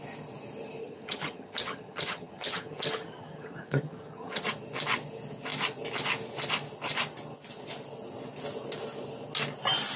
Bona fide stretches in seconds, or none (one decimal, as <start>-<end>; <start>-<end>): 0.0-0.8; 4.5-10.0